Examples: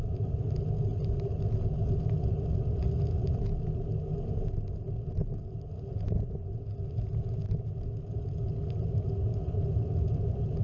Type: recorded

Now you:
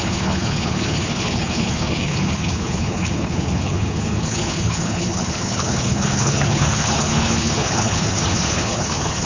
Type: remade